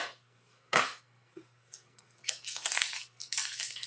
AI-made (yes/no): yes